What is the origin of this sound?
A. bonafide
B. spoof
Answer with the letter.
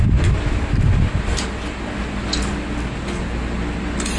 A